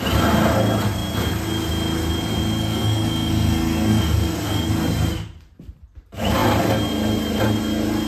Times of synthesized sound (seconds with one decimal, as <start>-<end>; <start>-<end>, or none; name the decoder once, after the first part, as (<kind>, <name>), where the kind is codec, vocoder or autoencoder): 2.6-4.7 (codec, SNAC)